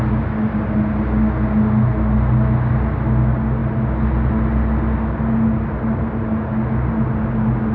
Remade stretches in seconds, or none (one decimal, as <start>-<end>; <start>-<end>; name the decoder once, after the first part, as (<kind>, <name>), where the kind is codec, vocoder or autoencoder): none